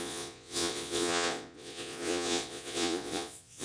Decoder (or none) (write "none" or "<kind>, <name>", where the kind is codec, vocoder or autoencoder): vocoder, Vocos